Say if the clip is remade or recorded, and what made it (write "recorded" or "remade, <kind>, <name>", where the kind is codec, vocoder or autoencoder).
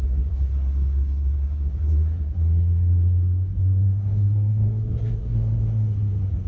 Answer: remade, codec, SNAC